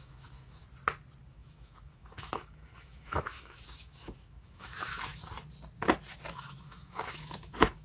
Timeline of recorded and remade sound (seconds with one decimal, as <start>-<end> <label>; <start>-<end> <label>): 0.0-0.6 remade; 0.6-1.3 recorded; 1.3-5.2 remade; 5.2-6.3 recorded; 6.3-7.8 remade